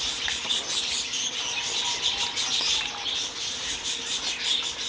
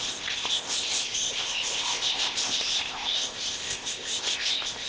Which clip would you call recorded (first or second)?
first